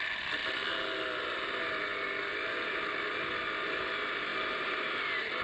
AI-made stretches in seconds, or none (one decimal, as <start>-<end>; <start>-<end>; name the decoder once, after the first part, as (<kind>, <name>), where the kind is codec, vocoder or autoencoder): 4.3-5.0 (vocoder, BigVGAN v2)